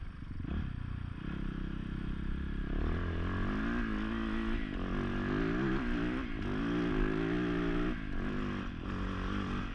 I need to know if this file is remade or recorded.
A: recorded